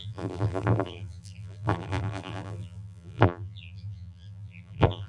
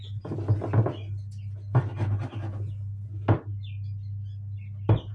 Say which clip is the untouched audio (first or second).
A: second